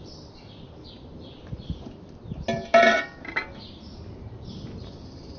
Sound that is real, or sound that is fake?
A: real